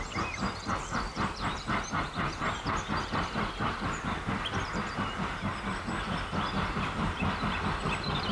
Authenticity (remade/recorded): remade